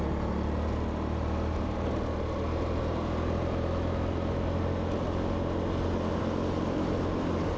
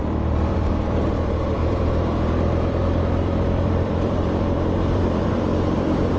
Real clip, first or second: first